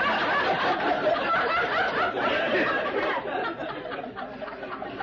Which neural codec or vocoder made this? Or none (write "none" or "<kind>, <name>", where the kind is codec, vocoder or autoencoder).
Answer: none